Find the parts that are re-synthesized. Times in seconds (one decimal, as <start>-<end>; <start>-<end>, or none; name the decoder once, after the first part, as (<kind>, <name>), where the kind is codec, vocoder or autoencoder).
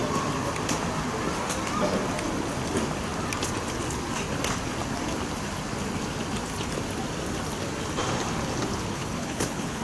8.7-9.8 (codec, HILCodec)